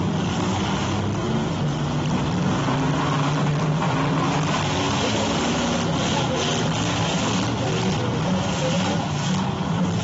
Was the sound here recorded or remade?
recorded